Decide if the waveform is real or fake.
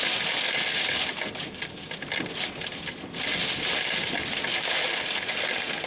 real